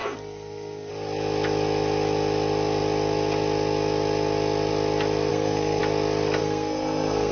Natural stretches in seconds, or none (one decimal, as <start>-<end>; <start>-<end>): 0.9-5.3; 5.8-6.4